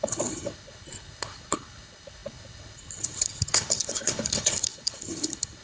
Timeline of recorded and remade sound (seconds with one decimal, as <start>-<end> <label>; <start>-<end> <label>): 0.0-5.6 remade